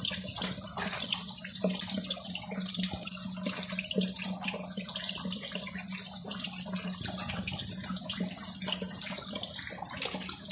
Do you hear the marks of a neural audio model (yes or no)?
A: no